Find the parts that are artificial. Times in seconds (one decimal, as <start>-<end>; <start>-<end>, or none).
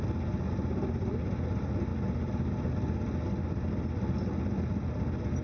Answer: none